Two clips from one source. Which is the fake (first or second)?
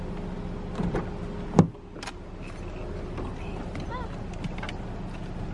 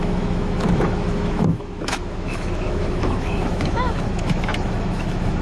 second